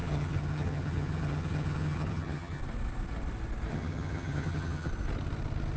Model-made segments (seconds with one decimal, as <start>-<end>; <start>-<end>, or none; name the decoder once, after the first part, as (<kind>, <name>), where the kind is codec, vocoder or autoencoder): 0.0-2.6 (vocoder, HiFi-GAN); 3.7-4.9